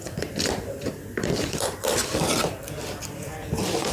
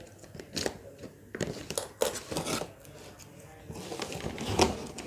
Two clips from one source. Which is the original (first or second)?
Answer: second